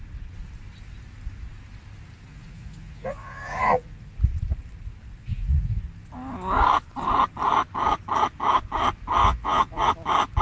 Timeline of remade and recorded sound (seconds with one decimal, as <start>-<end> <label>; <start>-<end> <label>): 0.0-2.3 recorded; 2.3-4.1 remade; 4.1-5.2 recorded; 5.2-5.8 remade; 5.8-9.2 recorded; 9.2-9.9 remade; 9.9-10.4 recorded